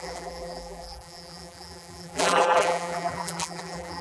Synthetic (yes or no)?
yes